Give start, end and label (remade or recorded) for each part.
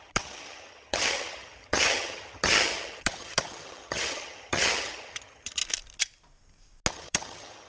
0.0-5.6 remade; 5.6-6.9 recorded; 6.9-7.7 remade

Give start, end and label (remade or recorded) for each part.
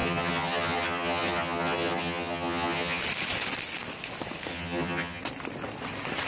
0.0-3.0 remade; 3.0-4.5 recorded; 4.5-5.2 remade; 5.2-6.3 recorded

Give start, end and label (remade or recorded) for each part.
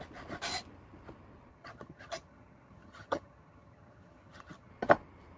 0.0-1.5 recorded; 1.5-4.7 remade; 4.7-5.4 recorded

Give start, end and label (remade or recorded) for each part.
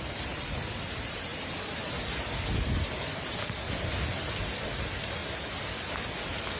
0.0-6.6 recorded